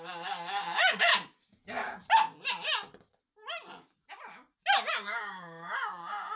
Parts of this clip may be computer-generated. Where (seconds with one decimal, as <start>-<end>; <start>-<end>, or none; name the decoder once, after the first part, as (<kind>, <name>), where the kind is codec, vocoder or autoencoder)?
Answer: 0.0-1.1 (codec, DAC); 4.9-6.4